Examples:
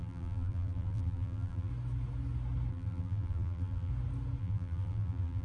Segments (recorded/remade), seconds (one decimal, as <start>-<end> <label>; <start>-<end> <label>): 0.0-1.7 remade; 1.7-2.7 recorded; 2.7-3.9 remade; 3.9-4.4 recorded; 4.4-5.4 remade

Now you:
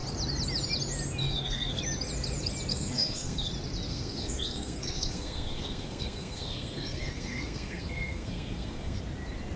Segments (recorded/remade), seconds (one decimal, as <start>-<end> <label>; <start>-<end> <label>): 0.0-1.2 recorded; 1.2-1.8 remade; 1.8-2.7 recorded; 2.7-3.5 remade; 3.5-3.9 recorded; 3.9-9.0 remade; 9.0-9.6 recorded

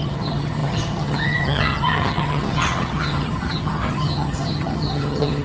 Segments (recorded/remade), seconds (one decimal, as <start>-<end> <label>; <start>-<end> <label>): 0.0-5.4 remade

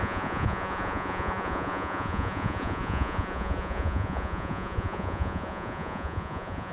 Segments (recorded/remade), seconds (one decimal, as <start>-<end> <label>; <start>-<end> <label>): 0.0-6.7 remade